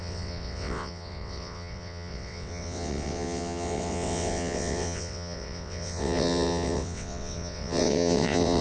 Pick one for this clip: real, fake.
fake